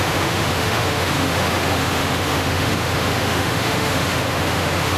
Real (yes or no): no